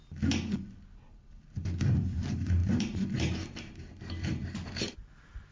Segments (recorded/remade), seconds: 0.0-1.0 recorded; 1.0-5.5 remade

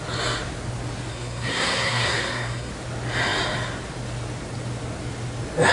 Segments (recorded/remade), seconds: 0.0-1.1 recorded; 1.1-2.7 remade; 2.7-5.7 recorded

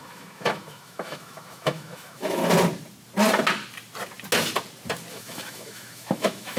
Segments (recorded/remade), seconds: 0.0-2.4 remade; 2.4-5.1 recorded; 5.1-6.6 remade

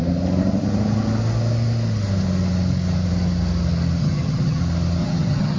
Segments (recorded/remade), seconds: 0.0-4.0 recorded; 4.0-4.6 remade; 4.6-5.0 recorded; 5.0-5.6 remade

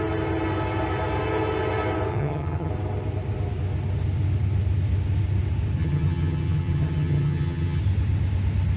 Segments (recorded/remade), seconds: 0.0-2.1 recorded; 2.1-2.7 remade; 2.7-5.8 recorded; 5.8-7.8 remade; 7.8-8.8 recorded

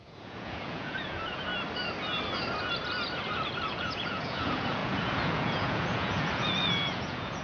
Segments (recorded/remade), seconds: 0.0-1.5 remade; 1.5-3.7 recorded; 3.7-7.4 remade

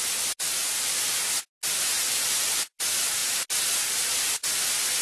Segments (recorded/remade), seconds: 0.0-5.0 recorded